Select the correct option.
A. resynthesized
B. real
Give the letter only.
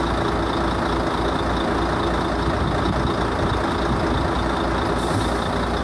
B